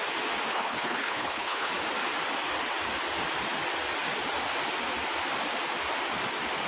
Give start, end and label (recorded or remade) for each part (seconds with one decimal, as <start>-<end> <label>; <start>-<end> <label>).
0.0-0.5 recorded; 0.5-1.7 remade; 1.7-6.7 recorded